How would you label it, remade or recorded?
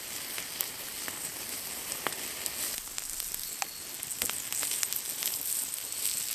recorded